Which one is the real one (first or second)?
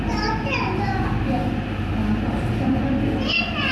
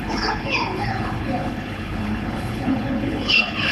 first